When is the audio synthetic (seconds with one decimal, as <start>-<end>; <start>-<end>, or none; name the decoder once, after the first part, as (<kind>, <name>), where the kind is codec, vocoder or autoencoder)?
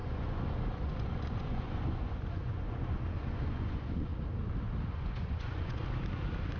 0.0-4.1 (vocoder, Vocos); 4.9-5.8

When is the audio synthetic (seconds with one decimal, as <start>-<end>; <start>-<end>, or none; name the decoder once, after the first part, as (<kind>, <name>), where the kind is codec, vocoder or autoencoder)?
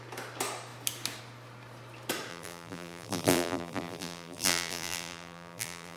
2.3-6.0 (vocoder, BigVGAN v2)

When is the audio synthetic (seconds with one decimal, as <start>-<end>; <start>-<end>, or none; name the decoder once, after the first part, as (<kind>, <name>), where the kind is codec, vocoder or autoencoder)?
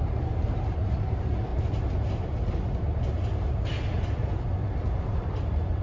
0.0-1.5 (vocoder, BigVGAN v2); 5.0-5.8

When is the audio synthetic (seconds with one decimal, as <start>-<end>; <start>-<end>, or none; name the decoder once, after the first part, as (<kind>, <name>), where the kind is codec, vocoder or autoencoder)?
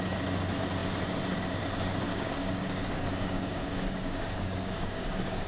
2.1-5.5 (codec, DAC)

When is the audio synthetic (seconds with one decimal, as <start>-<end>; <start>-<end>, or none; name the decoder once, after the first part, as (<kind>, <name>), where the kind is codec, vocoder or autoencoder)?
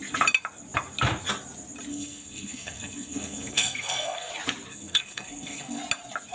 1.9-4.3 (codec, SNAC); 4.7-5.8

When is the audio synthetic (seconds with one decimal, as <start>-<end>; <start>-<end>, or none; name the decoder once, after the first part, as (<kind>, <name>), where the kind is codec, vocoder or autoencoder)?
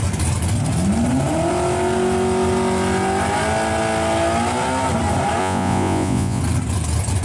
5.4-6.4 (vocoder, Vocos)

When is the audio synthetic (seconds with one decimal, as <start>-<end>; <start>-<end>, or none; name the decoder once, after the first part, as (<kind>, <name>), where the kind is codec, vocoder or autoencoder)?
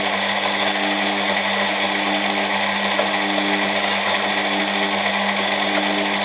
none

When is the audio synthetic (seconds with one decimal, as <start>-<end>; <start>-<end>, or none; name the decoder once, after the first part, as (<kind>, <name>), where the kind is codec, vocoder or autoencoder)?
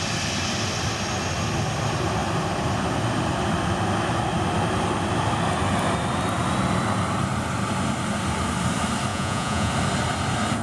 9.1-9.7 (vocoder, Vocos)